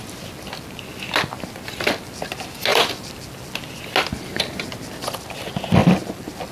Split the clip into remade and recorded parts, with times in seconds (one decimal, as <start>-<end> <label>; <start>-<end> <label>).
0.0-2.7 recorded; 2.7-3.8 remade; 3.8-5.8 recorded; 5.8-6.5 remade